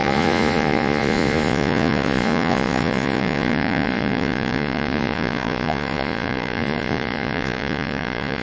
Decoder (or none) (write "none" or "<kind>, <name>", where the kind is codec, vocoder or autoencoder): vocoder, Vocos